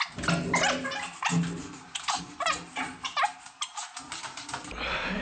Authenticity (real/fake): real